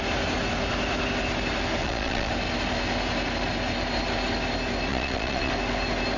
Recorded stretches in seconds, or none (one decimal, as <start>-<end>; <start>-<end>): 0.0-1.8; 2.3-4.9; 5.5-6.2